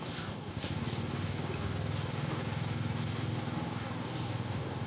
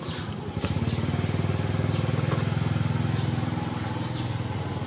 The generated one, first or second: first